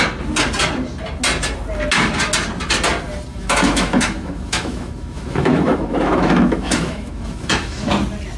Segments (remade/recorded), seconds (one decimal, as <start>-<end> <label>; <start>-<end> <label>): 0.0-3.3 recorded; 3.3-7.9 remade; 7.9-8.4 recorded